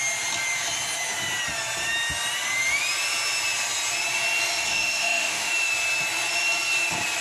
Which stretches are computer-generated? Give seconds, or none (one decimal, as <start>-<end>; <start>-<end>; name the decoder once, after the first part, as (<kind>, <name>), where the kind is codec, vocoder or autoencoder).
4.7-5.5 (autoencoder, DAC-VAE)